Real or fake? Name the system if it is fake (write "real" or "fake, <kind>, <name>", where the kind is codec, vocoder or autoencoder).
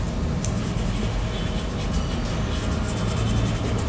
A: real